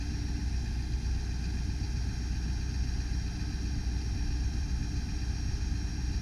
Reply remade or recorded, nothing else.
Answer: recorded